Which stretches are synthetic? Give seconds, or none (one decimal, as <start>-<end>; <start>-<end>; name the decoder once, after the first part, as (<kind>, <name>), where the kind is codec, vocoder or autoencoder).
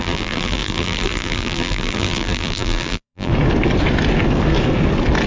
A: 0.0-3.3 (vocoder, BigVGAN v2)